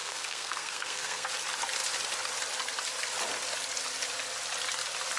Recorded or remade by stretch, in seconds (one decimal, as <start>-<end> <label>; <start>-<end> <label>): 0.0-1.3 remade; 1.3-5.2 recorded

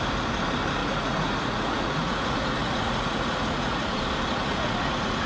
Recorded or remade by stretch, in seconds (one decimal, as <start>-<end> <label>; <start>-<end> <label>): 0.0-0.8 recorded; 0.8-4.0 remade; 4.0-4.4 recorded; 4.4-5.3 remade

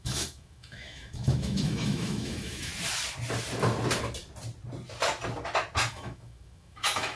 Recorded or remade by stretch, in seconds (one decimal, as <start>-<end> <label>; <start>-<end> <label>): 0.0-2.7 remade; 2.7-5.9 recorded; 5.9-7.2 remade

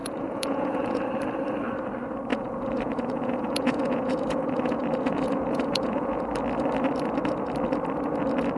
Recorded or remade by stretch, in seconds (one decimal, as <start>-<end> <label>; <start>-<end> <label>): 0.0-1.0 remade; 1.0-2.3 recorded; 2.3-6.2 remade; 6.2-8.6 recorded

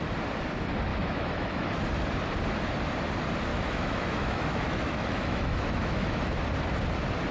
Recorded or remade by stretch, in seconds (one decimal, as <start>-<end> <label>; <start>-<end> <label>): 0.0-0.9 recorded; 0.9-1.7 remade; 1.7-3.5 recorded; 3.5-6.3 remade; 6.3-7.3 recorded

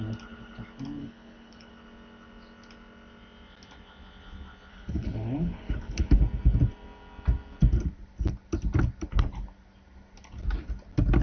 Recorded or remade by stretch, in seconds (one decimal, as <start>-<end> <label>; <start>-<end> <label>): 0.0-1.0 recorded; 1.0-1.7 remade; 1.7-4.7 recorded; 4.7-6.2 remade; 6.2-11.2 recorded

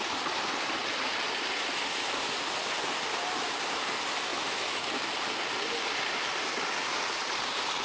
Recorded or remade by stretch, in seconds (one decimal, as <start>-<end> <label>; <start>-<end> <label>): 0.0-4.3 recorded; 4.3-4.9 remade; 4.9-7.8 recorded